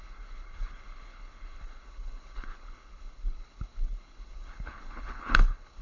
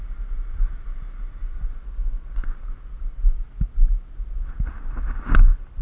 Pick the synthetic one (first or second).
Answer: first